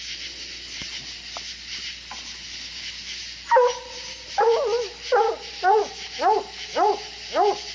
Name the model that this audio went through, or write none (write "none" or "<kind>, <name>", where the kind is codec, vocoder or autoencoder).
none